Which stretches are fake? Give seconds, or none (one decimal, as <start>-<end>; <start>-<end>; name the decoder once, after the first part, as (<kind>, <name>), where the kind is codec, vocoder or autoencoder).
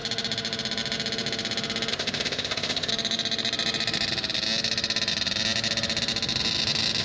1.9-2.9 (codec, ZipCodec)